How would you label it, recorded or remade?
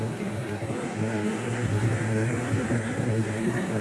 remade